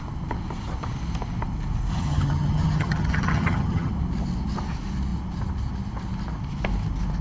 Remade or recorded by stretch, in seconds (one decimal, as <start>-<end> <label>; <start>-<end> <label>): 0.0-1.9 recorded; 1.9-3.9 remade; 3.9-7.2 recorded